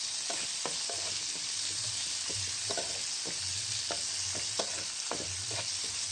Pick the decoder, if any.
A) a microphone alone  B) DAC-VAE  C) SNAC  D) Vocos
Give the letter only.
A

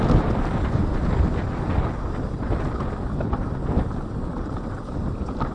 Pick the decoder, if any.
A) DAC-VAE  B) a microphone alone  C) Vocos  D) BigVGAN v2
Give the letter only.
D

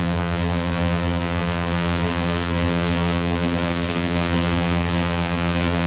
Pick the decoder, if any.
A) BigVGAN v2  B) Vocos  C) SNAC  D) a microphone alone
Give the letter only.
A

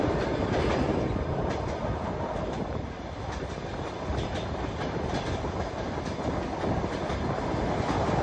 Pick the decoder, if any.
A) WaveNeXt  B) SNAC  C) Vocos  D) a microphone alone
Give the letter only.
D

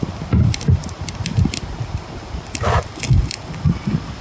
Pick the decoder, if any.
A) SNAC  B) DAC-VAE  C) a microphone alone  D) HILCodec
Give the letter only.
C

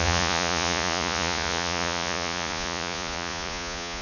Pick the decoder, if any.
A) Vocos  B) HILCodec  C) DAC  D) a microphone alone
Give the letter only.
A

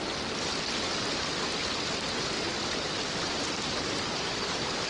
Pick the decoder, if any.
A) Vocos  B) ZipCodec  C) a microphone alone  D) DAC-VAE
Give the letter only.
C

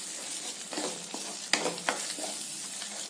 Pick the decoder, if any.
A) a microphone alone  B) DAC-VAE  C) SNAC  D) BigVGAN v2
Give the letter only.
A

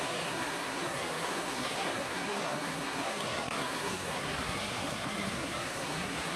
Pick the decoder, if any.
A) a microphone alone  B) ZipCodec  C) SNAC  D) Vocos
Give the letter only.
C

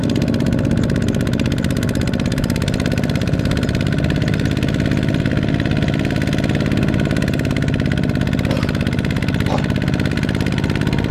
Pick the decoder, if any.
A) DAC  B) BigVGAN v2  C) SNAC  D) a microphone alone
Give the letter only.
D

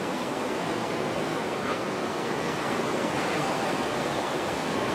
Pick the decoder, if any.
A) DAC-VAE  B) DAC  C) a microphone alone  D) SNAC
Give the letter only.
D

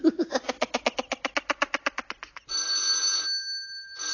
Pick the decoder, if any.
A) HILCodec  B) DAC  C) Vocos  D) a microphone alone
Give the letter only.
D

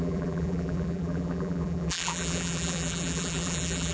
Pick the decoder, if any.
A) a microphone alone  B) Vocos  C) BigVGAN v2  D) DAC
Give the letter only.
C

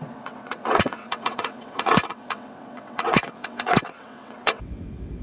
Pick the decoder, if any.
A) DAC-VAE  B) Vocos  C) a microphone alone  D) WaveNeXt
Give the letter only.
D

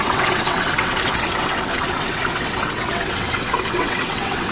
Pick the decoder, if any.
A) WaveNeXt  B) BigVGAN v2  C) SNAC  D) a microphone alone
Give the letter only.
A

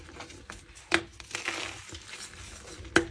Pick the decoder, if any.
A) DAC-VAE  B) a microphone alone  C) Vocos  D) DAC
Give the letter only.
B